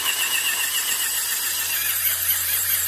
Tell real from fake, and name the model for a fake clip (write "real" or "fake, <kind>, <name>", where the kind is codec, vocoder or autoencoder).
real